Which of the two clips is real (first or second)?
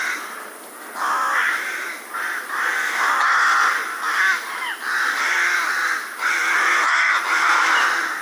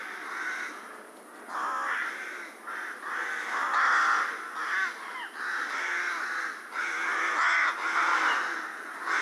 second